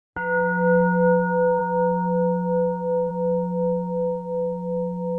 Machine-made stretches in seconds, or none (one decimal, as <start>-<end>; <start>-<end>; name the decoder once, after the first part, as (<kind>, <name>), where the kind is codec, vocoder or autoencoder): none